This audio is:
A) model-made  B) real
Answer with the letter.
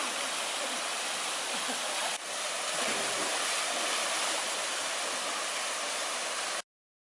B